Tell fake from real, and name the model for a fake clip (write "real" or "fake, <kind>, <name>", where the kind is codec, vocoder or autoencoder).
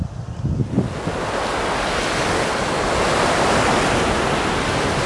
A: real